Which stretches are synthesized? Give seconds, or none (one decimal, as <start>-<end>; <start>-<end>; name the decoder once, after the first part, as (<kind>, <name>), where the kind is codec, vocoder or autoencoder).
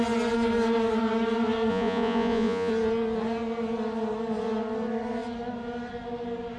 1.7-2.7 (vocoder, Vocos)